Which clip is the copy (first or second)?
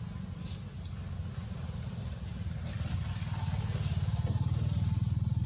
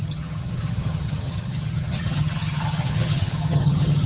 second